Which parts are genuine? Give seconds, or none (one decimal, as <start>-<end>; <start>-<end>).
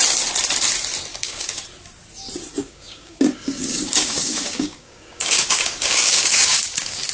0.0-1.1; 1.6-2.6